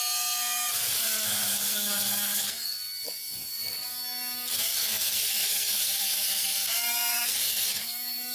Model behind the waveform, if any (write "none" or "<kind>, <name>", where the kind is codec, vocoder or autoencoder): codec, SNAC